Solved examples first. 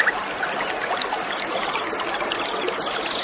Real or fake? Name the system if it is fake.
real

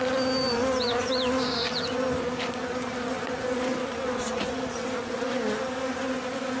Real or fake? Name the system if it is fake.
real